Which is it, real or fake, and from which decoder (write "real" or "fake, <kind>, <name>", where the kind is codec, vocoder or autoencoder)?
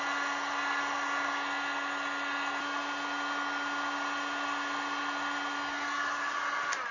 real